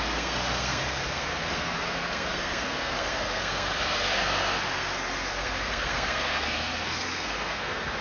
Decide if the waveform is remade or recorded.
remade